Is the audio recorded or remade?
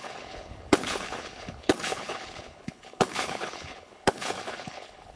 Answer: remade